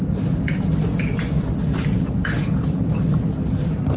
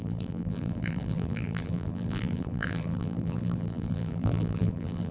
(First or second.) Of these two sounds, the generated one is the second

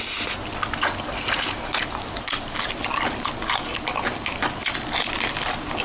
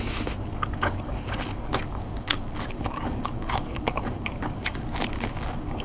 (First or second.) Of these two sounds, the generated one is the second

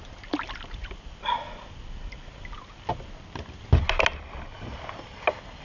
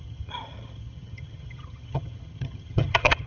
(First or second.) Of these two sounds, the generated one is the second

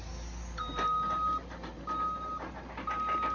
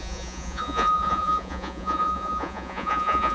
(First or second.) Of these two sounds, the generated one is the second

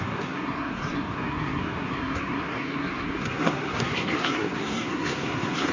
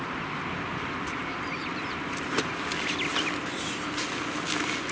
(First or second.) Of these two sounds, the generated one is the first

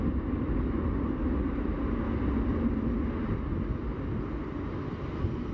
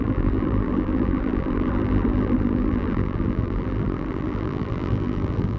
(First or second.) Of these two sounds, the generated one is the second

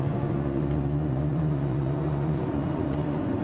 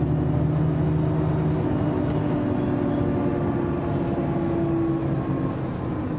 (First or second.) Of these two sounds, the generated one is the first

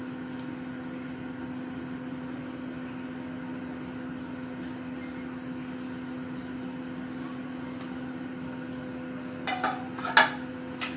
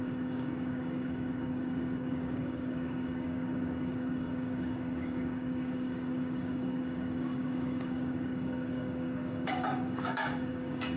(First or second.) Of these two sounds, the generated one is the second